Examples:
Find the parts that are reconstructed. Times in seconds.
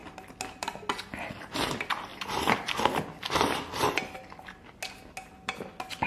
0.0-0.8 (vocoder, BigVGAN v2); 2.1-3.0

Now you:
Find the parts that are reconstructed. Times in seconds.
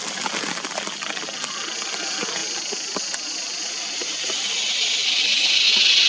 none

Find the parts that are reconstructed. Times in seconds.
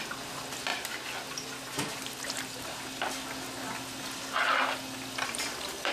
none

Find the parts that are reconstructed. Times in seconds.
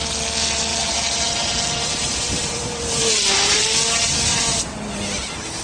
0.7-3.6 (vocoder, BigVGAN v2)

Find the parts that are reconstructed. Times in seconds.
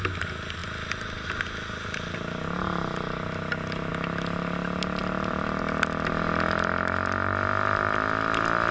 5.0-5.6 (vocoder, BigVGAN v2)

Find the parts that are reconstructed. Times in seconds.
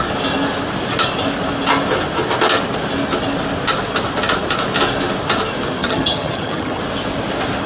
5.8-6.8 (vocoder, HiFi-GAN)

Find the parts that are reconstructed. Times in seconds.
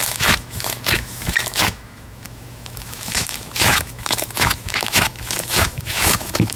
0.0-6.6 (autoencoder, DAC-VAE)